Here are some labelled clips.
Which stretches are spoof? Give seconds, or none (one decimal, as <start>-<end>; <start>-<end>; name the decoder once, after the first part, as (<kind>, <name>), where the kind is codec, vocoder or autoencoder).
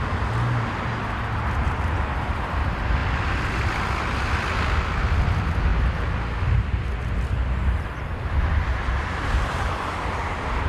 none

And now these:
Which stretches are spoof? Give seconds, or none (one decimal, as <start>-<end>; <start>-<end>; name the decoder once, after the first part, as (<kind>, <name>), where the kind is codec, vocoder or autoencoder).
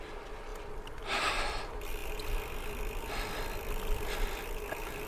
none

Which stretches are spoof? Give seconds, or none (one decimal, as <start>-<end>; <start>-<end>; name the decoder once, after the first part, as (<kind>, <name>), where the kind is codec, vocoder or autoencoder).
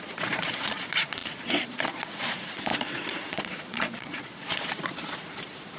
0.0-5.8 (vocoder, Vocos)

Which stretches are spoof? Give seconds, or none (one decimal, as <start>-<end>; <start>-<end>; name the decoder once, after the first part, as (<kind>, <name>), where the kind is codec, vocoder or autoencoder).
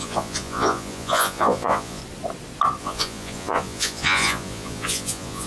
0.0-2.0 (vocoder, Vocos); 2.8-5.5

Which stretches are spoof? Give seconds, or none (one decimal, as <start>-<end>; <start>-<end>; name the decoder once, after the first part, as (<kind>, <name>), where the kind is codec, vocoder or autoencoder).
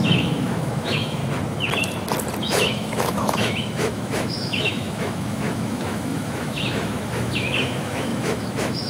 0.0-1.2 (autoencoder, DAC-VAE); 2.4-8.9